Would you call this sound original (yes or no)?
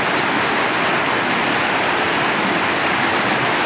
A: yes